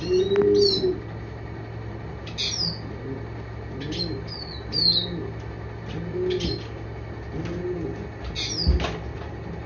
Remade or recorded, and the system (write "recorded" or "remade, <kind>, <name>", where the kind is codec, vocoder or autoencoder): recorded